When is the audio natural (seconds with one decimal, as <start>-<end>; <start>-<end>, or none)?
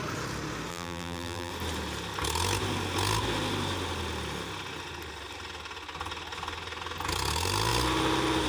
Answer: 0.0-0.7; 1.5-8.5